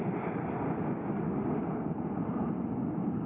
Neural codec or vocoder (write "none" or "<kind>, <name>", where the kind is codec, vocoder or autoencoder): vocoder, BigVGAN v2